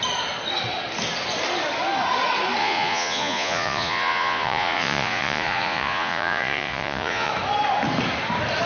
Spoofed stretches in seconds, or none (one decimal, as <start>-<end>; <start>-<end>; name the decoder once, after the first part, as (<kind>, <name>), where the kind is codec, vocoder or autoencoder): 2.6-7.3 (vocoder, Vocos)